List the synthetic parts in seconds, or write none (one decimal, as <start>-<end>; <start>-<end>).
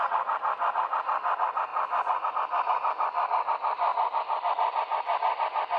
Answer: 0.0-1.7; 2.3-3.9; 4.4-5.8